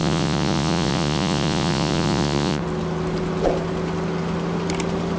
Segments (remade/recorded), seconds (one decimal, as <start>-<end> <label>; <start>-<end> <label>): 0.0-2.6 remade; 2.6-5.2 recorded

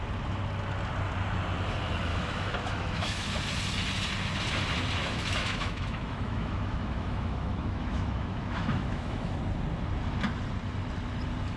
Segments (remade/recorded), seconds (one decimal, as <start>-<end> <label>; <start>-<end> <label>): 0.0-2.1 recorded; 2.1-3.4 remade; 3.4-5.0 recorded; 5.0-9.4 remade; 9.4-11.6 recorded